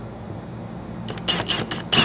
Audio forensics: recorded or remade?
recorded